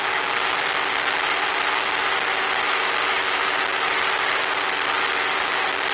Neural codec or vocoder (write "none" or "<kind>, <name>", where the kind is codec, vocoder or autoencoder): none